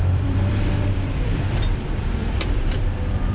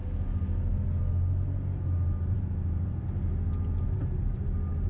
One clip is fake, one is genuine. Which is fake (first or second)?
first